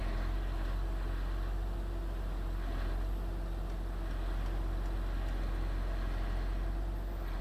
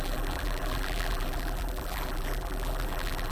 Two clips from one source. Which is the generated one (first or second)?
second